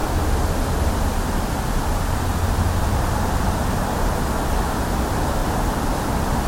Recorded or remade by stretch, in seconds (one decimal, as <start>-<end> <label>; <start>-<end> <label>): 0.0-6.5 recorded